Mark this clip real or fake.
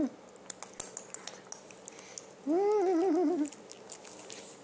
real